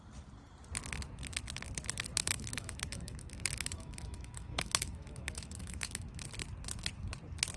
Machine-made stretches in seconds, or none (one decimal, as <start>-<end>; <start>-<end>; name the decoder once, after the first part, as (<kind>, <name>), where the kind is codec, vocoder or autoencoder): 2.2-6.2 (autoencoder, DAC-VAE)